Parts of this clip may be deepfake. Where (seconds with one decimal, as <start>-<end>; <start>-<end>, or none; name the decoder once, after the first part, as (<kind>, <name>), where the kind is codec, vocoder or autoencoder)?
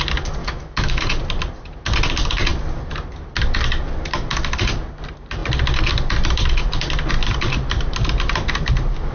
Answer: 0.4-1.0 (autoencoder, DAC-VAE)